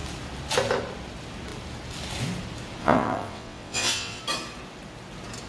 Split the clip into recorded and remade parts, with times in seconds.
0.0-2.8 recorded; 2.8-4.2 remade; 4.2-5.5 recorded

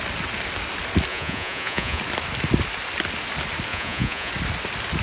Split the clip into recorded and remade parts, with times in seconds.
0.0-1.1 recorded; 1.1-2.0 remade; 2.0-3.7 recorded; 3.7-4.3 remade; 4.3-5.0 recorded